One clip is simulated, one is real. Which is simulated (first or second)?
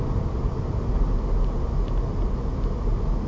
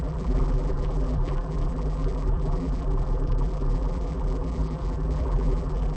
second